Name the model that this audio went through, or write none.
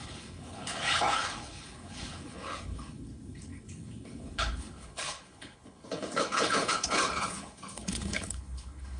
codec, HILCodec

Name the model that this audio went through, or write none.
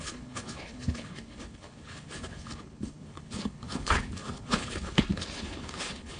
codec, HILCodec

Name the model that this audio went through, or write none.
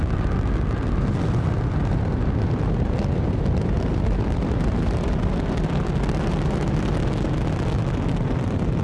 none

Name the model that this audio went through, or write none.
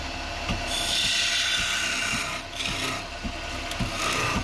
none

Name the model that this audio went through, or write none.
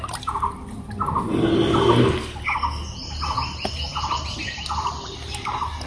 none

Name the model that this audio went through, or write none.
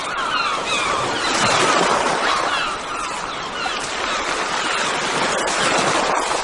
none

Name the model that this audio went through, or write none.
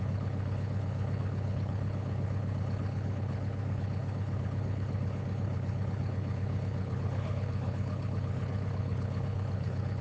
codec, HILCodec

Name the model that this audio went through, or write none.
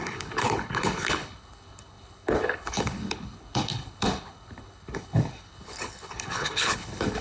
codec, HILCodec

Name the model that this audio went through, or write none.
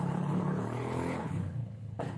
codec, HILCodec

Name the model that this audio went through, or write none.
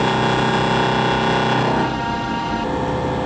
none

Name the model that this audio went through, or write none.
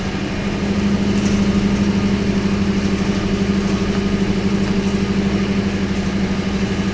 none